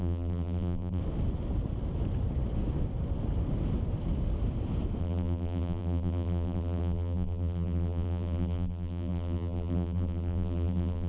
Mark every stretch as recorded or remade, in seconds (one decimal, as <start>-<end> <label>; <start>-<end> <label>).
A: 0.0-1.0 remade; 1.0-5.0 recorded; 5.0-11.1 remade